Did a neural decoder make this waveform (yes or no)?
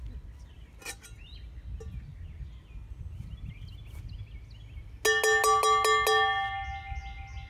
no